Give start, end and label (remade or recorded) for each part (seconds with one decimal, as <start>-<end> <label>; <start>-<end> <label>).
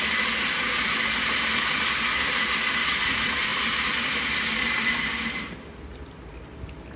0.0-7.0 recorded